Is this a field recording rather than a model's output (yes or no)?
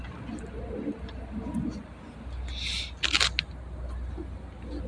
yes